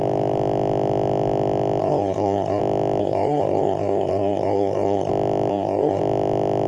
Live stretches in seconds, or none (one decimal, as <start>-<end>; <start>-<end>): 0.0-1.8; 2.6-3.0; 5.1-5.5; 6.0-6.7